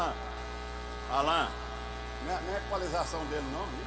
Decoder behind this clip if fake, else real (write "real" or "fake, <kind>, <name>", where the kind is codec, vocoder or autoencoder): real